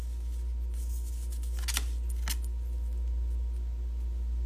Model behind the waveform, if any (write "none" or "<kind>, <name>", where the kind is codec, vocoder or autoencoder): none